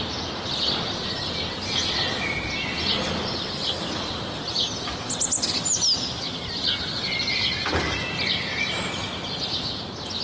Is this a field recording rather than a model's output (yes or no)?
yes